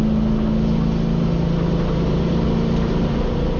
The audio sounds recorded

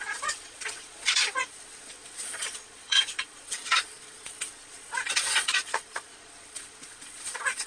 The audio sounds remade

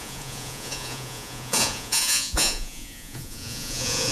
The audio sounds remade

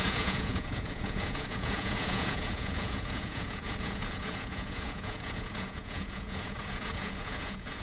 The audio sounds remade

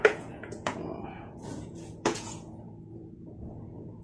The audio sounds remade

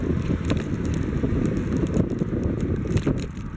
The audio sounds recorded